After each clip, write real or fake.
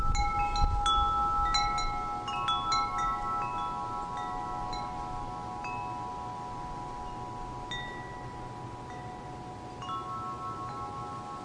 real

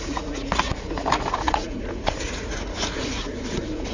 fake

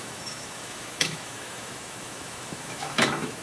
fake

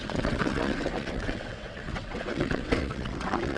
fake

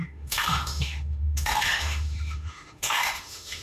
fake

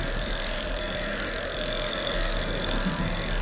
fake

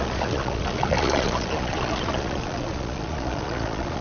fake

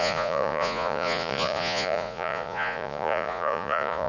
fake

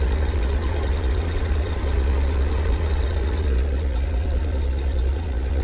fake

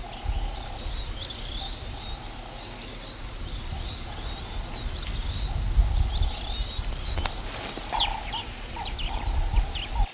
real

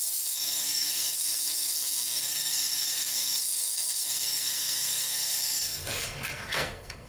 fake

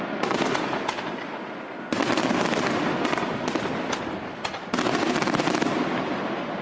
real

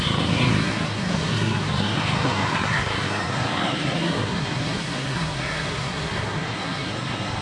fake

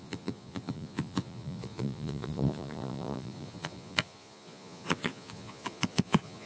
fake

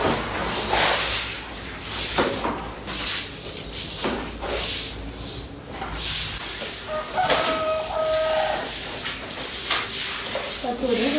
real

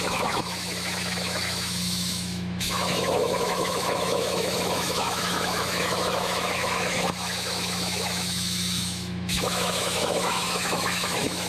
fake